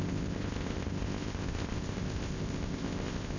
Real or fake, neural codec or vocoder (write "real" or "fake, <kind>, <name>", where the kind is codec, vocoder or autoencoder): fake, codec, ZipCodec